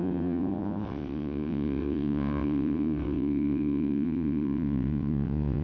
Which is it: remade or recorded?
remade